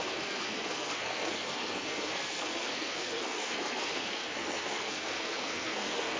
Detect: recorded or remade remade